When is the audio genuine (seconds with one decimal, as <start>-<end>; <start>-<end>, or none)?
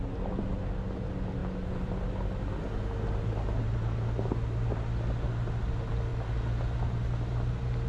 0.0-7.9